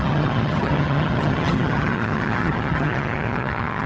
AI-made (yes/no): yes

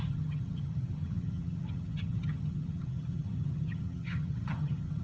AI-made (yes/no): yes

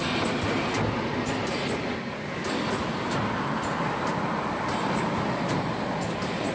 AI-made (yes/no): no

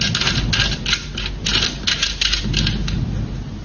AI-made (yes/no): no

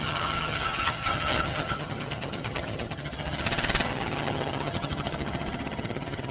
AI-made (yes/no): yes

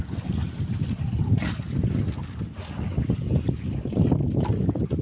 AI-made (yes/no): no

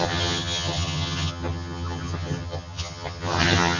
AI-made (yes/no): yes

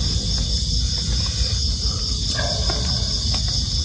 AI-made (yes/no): no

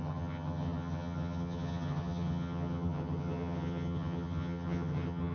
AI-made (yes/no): yes